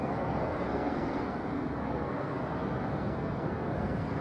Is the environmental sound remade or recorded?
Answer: remade